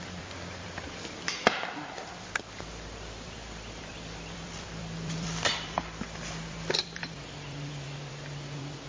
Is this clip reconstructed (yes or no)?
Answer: yes